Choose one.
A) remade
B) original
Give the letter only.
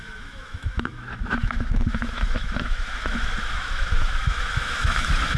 A